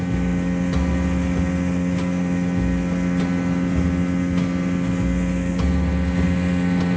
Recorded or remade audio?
recorded